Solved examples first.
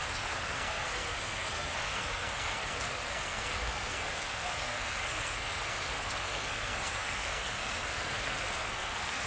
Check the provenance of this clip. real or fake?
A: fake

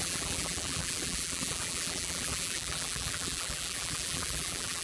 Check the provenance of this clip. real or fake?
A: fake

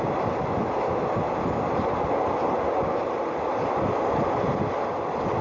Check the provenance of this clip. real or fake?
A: real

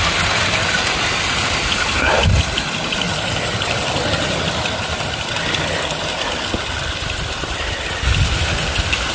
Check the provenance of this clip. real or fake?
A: real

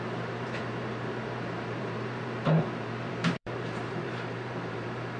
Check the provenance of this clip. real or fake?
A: fake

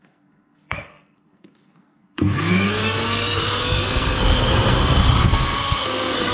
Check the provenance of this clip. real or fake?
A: fake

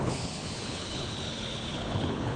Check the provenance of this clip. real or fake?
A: fake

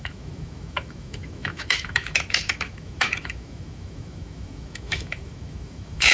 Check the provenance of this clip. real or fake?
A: fake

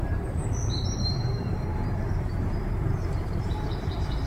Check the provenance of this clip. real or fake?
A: fake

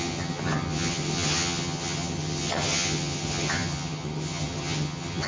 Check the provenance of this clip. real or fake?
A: fake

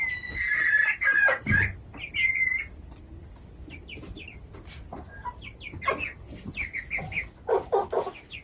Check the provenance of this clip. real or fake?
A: real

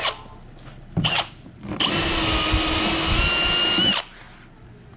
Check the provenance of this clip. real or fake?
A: real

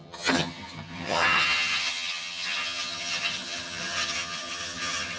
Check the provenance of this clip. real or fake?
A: fake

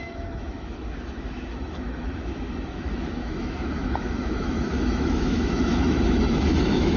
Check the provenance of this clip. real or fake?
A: fake